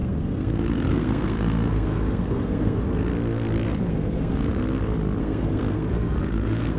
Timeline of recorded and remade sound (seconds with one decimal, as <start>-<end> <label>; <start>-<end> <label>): 0.0-3.1 remade; 3.1-3.9 recorded; 3.9-4.6 remade; 4.6-5.2 recorded; 5.2-6.8 remade